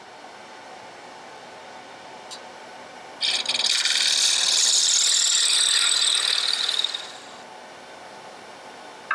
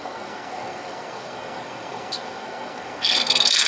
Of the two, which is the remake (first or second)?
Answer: second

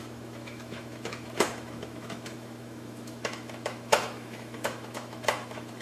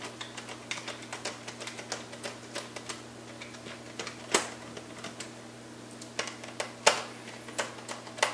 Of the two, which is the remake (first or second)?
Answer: first